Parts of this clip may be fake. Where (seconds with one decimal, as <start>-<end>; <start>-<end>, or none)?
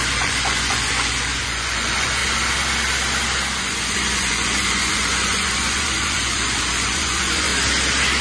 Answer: 0.0-2.2; 3.6-7.5